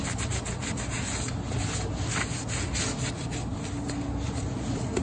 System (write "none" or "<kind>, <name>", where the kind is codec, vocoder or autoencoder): none